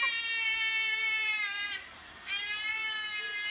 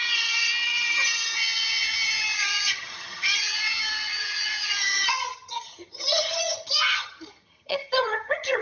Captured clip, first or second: first